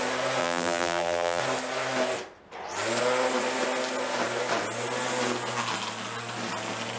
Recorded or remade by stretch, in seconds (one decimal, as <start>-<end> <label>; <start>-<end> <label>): 0.0-0.4 recorded; 0.4-1.4 remade; 1.4-7.0 recorded